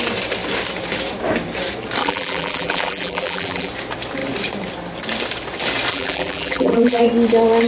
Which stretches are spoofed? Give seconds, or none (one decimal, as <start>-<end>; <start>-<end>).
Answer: 2.0-3.7; 5.9-7.0